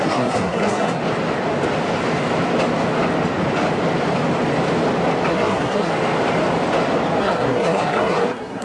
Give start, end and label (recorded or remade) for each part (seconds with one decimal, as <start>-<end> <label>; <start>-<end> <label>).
0.0-1.0 remade; 1.0-5.3 recorded; 5.3-5.9 remade; 5.9-7.2 recorded; 7.2-8.6 remade